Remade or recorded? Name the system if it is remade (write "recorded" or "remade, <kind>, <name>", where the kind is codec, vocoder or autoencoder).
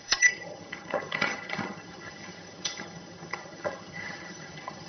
remade, vocoder, HiFi-GAN